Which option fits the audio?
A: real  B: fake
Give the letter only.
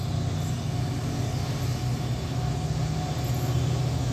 A